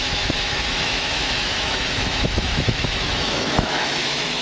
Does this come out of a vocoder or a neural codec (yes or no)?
yes